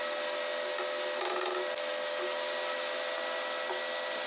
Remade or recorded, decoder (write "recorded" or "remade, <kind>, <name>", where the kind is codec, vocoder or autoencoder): recorded